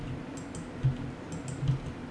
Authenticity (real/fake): real